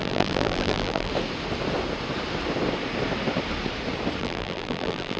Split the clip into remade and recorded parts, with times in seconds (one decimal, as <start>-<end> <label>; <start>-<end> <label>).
0.0-1.1 remade; 1.1-4.2 recorded; 4.2-5.2 remade